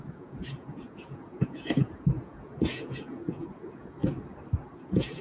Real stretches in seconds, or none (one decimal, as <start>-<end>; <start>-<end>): 4.0-4.7